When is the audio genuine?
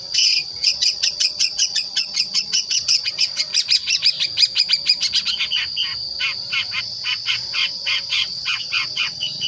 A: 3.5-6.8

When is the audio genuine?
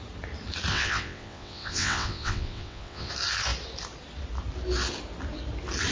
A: 0.0-0.7; 3.1-5.9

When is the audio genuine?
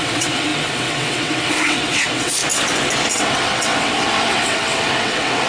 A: 2.4-3.1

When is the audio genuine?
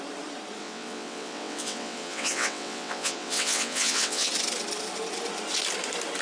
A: 0.0-0.6; 4.3-6.2